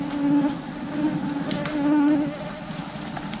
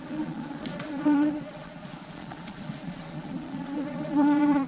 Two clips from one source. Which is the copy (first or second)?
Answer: second